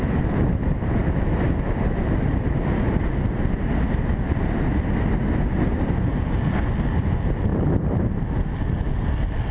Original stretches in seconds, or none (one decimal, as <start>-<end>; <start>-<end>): 0.0-9.5

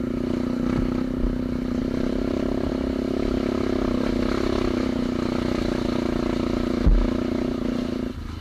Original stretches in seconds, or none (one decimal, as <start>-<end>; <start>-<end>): 0.0-1.8; 2.7-8.4

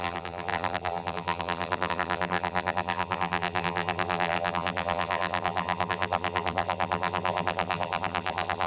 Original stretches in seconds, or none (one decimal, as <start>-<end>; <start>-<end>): none

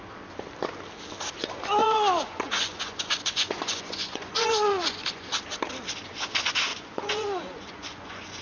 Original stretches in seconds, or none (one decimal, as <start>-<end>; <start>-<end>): 0.0-1.8; 5.3-6.7